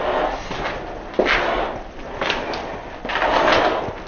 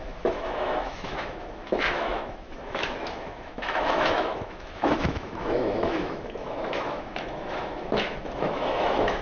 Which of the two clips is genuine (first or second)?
first